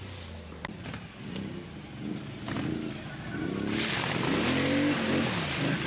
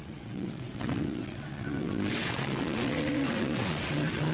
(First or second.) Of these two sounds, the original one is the first